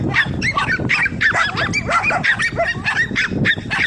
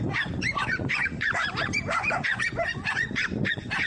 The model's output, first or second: second